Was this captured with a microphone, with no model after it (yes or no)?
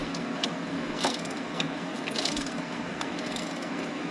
no